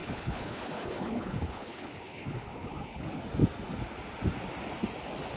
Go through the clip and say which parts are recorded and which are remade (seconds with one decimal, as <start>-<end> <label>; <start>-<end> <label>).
0.0-3.2 remade; 3.2-5.4 recorded

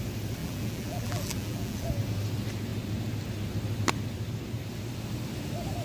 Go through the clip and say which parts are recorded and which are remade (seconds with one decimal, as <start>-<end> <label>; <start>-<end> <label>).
0.0-0.4 recorded; 0.4-1.9 remade; 1.9-5.8 recorded

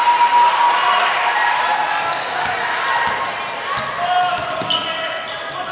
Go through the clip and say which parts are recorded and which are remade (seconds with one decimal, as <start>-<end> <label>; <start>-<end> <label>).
0.0-5.7 recorded

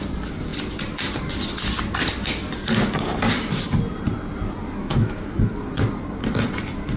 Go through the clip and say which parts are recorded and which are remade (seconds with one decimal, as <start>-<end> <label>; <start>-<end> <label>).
0.0-4.8 recorded; 4.8-5.4 remade; 5.4-7.0 recorded

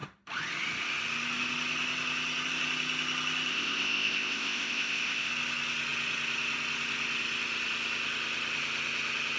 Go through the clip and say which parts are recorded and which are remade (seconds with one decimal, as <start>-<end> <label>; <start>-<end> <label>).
0.0-3.5 recorded; 3.5-5.3 remade; 5.3-9.4 recorded

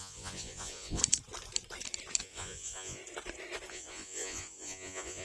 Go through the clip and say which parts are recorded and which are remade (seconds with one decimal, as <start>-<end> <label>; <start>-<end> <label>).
0.0-1.0 remade; 1.0-2.2 recorded; 2.2-3.0 remade; 3.0-3.7 recorded; 3.7-5.2 remade

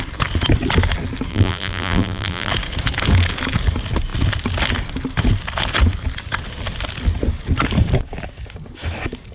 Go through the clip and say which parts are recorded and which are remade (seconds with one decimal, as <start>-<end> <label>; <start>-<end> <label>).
0.0-1.3 recorded; 1.3-2.5 remade; 2.5-9.3 recorded

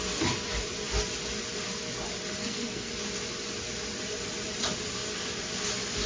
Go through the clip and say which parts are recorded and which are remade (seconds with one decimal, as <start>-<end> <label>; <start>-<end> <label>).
0.0-2.4 recorded; 2.4-2.9 remade; 2.9-6.1 recorded